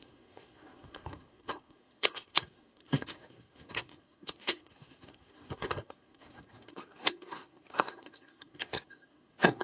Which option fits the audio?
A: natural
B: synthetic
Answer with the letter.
B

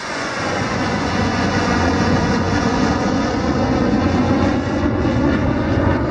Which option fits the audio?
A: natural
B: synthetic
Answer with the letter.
B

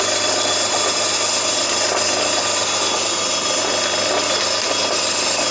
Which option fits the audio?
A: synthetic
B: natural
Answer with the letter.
B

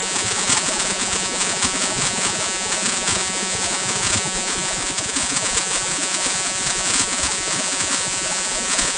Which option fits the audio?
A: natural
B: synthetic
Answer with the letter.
B